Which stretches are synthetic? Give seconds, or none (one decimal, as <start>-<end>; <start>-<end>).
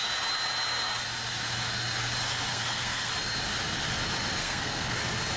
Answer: 2.5-3.1; 4.4-5.0